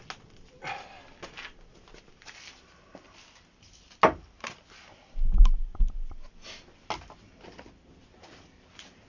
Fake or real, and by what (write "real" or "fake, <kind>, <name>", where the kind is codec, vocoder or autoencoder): real